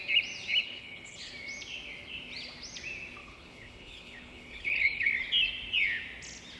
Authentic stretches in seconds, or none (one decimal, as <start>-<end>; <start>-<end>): 0.0-0.6; 1.3-3.2; 5.1-6.6